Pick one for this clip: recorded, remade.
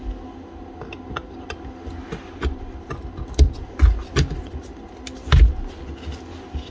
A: recorded